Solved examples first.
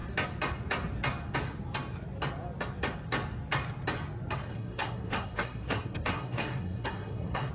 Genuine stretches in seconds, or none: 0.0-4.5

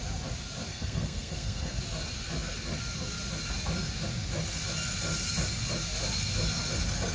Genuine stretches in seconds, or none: 0.0-0.7; 1.8-7.1

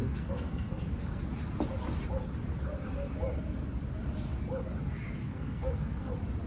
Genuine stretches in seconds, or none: 1.2-5.2; 6.1-6.5

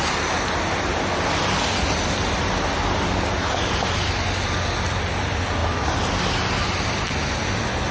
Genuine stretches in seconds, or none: 0.0-7.9

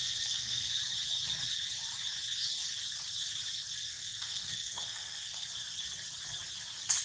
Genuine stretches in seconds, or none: 0.7-3.9; 5.5-7.0